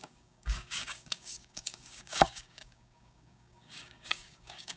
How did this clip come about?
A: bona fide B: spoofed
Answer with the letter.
B